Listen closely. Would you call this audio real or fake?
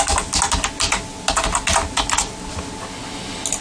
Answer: real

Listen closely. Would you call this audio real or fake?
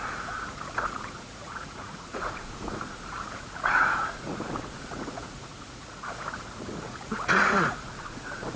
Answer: fake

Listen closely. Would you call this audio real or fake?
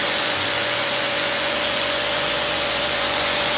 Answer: fake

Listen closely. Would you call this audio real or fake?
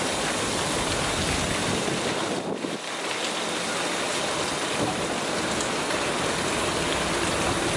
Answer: real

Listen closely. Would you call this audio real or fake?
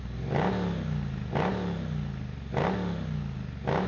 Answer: real